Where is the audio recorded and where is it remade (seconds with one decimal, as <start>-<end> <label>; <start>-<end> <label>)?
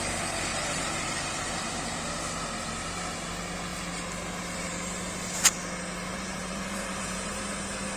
0.0-0.5 recorded; 0.5-1.5 remade; 1.5-6.1 recorded; 6.1-7.4 remade; 7.4-8.0 recorded